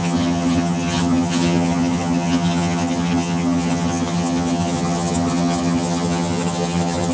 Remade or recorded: remade